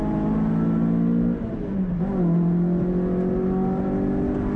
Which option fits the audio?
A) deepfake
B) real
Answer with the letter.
B